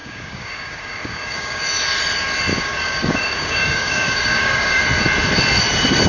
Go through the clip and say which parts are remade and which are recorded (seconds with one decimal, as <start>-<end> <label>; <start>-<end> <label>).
0.0-1.6 remade; 1.6-2.5 recorded; 2.5-4.8 remade; 4.8-6.1 recorded